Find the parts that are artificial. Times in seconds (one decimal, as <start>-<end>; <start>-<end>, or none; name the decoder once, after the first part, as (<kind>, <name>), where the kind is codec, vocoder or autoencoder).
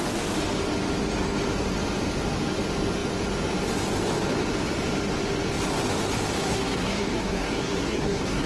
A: 6.4-8.5 (codec, SNAC)